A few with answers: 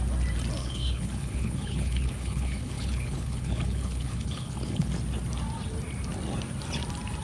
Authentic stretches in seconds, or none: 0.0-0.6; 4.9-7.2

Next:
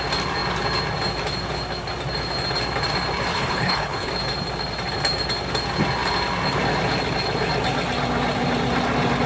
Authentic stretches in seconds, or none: 0.0-3.3; 4.1-9.3

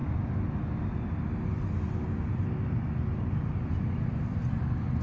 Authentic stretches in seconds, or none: 0.0-5.0

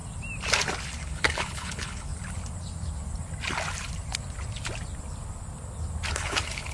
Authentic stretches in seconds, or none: 0.0-1.0; 2.1-6.1

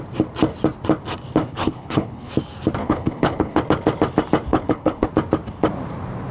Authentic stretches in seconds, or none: 0.0-1.4; 2.3-2.8; 3.6-4.5; 5.1-6.3